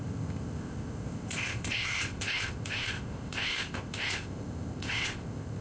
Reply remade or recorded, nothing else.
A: remade